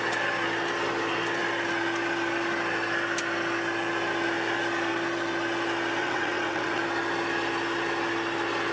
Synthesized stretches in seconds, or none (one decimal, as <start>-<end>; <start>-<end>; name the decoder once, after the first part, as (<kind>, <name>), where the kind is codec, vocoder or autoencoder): 6.0-6.8 (vocoder, WaveNeXt)